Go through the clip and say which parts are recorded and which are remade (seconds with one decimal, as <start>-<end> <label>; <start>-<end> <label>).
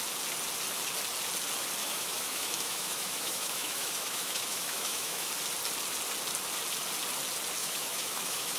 0.0-1.8 recorded; 1.8-5.3 remade; 5.3-7.6 recorded; 7.6-8.6 remade